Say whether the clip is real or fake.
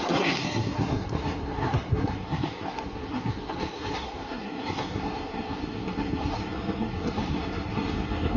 fake